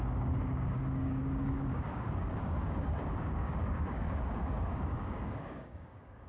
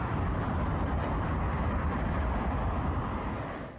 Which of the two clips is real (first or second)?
second